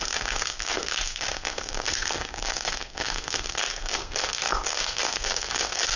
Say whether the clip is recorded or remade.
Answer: remade